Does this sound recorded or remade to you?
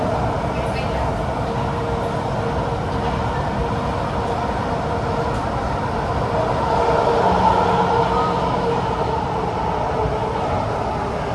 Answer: recorded